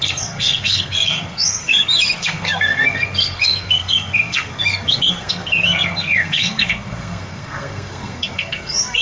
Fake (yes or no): yes